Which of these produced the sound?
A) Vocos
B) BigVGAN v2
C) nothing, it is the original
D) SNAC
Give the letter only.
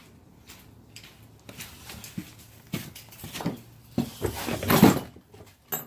C